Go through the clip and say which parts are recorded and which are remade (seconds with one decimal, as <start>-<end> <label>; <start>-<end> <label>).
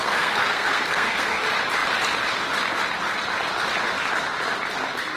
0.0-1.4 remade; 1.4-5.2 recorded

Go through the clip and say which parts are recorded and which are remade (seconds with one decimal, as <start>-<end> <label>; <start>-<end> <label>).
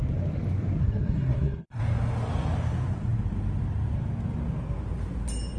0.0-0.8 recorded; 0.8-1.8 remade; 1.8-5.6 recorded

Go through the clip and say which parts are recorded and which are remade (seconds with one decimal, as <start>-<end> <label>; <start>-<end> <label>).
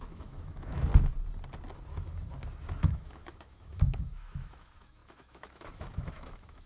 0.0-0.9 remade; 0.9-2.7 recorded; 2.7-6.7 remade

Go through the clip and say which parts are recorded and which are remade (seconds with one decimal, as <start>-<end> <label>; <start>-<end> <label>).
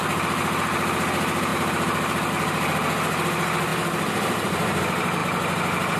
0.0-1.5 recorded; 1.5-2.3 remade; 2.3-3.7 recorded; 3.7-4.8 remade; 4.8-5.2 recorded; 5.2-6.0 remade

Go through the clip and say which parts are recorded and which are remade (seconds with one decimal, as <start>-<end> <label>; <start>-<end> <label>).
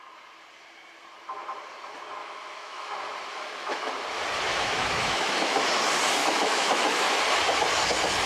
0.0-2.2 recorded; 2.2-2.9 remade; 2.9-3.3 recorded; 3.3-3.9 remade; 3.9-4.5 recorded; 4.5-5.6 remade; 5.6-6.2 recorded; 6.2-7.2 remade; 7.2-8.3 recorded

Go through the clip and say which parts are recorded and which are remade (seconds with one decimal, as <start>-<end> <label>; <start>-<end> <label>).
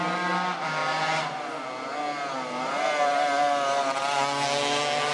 0.0-5.1 recorded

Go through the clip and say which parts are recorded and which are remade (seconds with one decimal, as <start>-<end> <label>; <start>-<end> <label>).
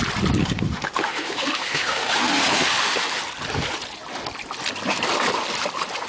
0.0-0.4 recorded; 0.4-3.2 remade; 3.2-6.1 recorded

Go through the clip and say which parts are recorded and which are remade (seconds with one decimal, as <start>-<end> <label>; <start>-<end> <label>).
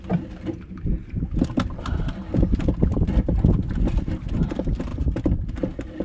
0.0-6.0 recorded